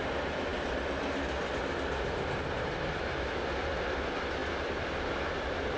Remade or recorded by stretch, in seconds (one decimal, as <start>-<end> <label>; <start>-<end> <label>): 0.0-0.5 recorded; 0.5-1.6 remade; 1.6-4.4 recorded; 4.4-5.8 remade